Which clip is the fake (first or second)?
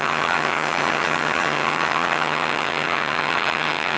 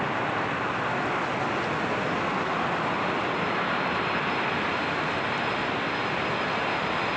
first